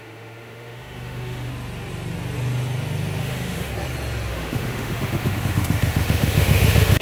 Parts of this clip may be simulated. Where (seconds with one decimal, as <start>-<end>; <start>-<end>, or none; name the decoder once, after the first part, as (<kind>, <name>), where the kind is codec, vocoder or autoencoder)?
0.0-1.5 (autoencoder, DAC-VAE); 3.2-3.7; 4.3-7.0